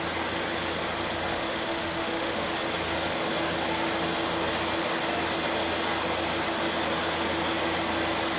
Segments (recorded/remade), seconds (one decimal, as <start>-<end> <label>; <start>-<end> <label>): 0.0-1.3 recorded; 1.3-2.5 remade; 2.5-8.4 recorded